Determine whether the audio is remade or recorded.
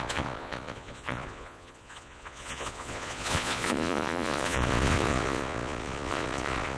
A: remade